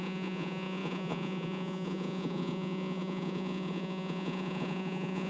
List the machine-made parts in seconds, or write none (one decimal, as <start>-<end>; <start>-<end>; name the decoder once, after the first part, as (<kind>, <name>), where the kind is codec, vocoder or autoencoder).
0.0-5.3 (vocoder, Vocos)